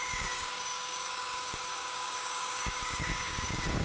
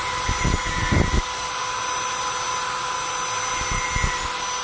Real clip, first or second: second